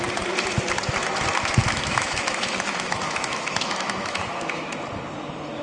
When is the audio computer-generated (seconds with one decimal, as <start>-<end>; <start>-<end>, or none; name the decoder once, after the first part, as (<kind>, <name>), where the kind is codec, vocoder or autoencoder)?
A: 1.6-4.7 (autoencoder, DAC-VAE)